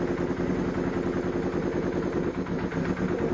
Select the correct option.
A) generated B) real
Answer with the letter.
B